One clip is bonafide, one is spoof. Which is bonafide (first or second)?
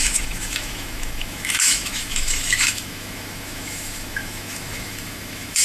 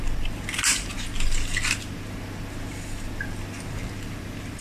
second